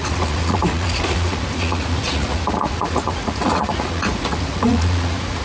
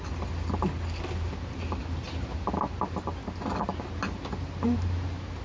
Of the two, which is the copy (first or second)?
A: first